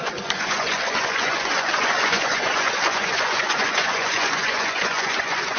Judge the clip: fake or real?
fake